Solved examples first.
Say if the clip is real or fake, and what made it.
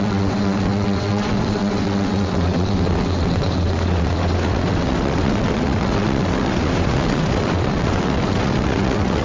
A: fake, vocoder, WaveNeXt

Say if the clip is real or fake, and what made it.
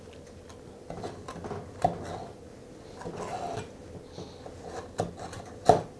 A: real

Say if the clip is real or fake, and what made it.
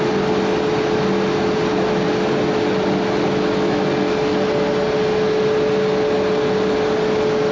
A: real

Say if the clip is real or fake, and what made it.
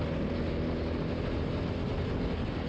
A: real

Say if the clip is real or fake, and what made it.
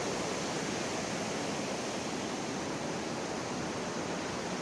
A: real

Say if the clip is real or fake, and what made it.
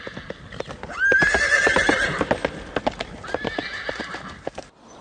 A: real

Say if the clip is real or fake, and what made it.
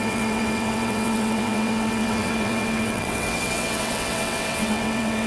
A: fake, vocoder, WaveNeXt